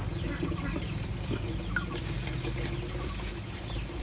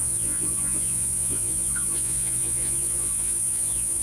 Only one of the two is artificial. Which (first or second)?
second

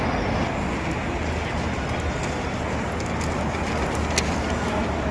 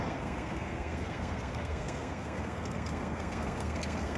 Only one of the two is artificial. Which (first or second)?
second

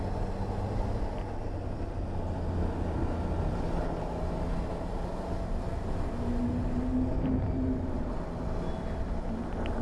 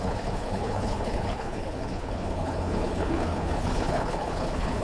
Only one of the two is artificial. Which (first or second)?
second